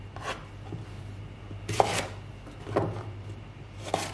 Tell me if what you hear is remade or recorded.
recorded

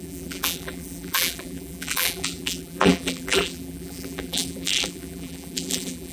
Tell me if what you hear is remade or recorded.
remade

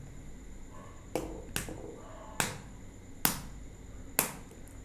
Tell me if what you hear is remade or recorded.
recorded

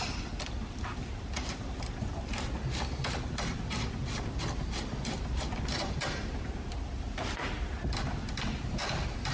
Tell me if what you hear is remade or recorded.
remade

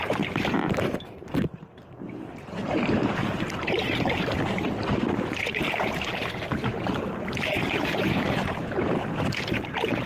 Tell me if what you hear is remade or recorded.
remade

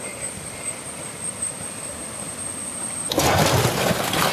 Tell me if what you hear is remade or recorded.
remade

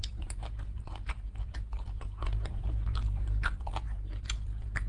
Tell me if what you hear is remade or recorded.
remade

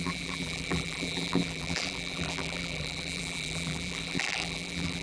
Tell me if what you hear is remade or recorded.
remade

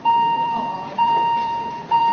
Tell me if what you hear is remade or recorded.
remade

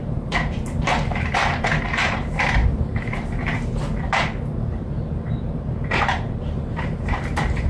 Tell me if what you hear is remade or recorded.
remade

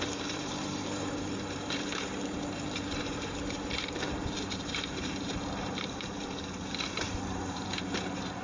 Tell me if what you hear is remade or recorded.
remade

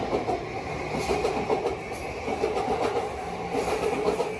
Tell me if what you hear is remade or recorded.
recorded